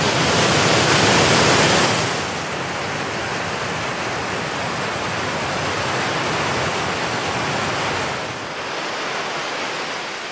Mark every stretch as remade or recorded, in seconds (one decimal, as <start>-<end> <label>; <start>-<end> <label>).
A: 0.0-10.3 recorded